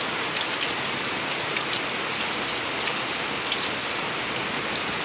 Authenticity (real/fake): real